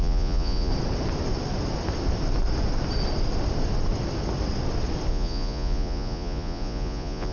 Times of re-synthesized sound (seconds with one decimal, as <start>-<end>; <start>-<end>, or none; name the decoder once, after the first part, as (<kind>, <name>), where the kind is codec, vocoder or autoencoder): 0.0-0.7 (vocoder, Vocos); 5.1-7.3